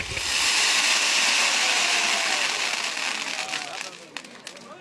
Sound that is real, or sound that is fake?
real